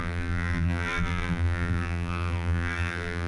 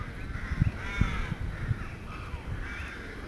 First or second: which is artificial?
first